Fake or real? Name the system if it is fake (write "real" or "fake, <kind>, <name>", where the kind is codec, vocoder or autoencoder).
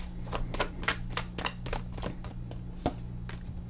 real